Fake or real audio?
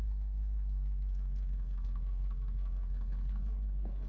fake